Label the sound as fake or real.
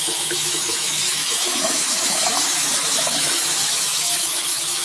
fake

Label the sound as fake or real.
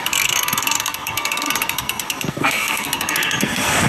fake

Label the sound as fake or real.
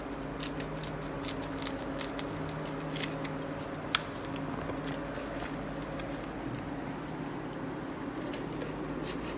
real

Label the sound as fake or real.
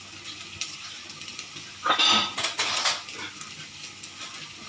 real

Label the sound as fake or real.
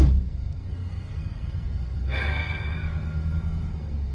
fake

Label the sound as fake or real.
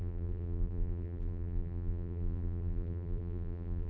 fake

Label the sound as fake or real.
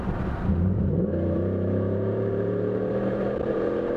fake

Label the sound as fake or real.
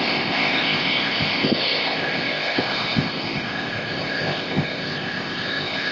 fake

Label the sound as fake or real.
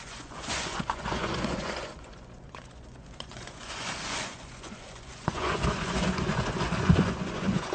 fake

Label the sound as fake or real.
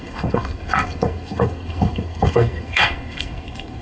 fake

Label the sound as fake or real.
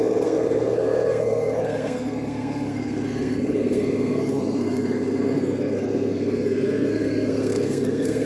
fake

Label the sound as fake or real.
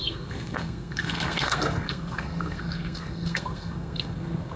fake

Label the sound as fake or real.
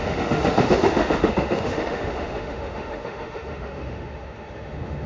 fake